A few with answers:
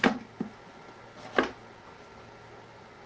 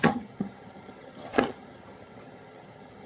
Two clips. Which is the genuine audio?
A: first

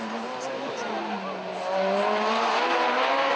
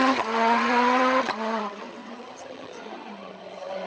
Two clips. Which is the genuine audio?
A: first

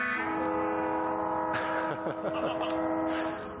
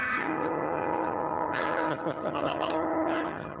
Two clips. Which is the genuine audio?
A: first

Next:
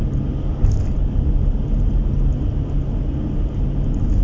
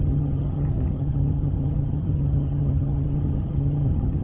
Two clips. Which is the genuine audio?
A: first